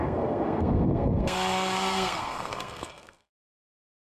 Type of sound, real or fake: fake